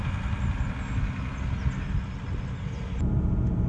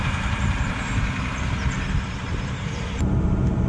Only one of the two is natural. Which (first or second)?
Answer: first